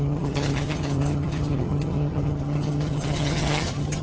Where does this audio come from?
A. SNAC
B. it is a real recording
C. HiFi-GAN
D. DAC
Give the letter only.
C